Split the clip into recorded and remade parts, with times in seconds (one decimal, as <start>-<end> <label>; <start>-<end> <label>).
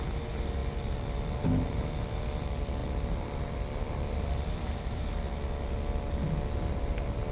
0.0-0.6 recorded; 0.6-1.4 remade; 1.4-2.8 recorded; 2.8-5.0 remade; 5.0-7.3 recorded